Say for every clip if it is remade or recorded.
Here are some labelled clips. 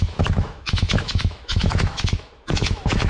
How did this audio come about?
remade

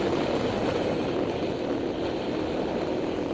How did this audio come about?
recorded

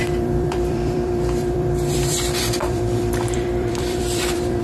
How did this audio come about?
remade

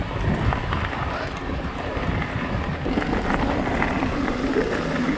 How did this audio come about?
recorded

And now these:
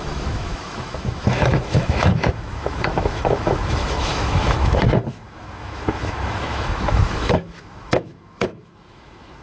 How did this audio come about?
remade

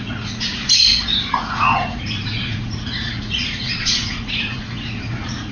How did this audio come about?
remade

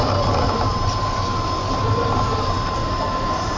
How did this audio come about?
recorded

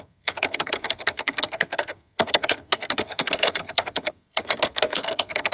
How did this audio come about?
remade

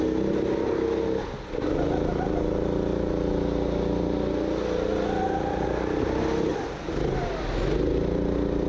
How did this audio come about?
recorded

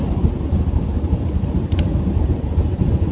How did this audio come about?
recorded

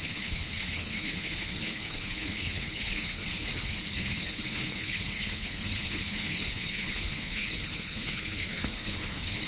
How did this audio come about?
remade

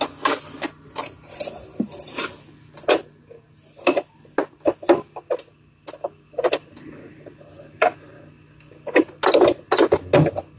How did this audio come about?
recorded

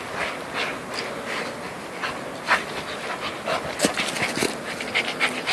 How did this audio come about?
recorded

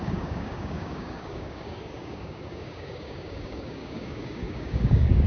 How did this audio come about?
remade